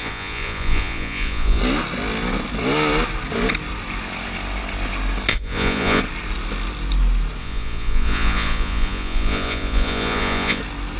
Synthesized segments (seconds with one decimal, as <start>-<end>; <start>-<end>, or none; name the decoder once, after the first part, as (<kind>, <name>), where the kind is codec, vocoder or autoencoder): 0.0-1.6 (vocoder, Vocos); 5.3-6.0; 7.4-10.6